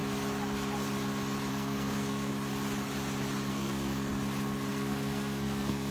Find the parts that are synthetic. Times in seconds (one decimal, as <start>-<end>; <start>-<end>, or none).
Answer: 1.5-2.3; 3.5-4.1; 4.7-5.9